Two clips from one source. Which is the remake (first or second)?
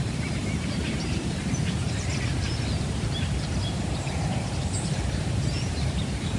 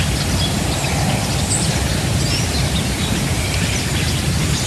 first